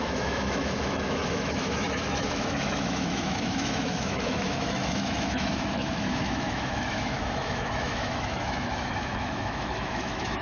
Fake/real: fake